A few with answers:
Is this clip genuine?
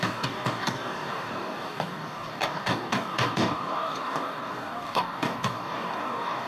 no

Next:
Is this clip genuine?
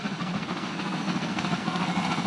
no